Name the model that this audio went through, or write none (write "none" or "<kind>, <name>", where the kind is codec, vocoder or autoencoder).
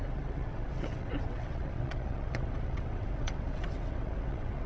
vocoder, WaveNeXt